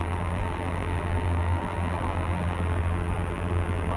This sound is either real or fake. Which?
fake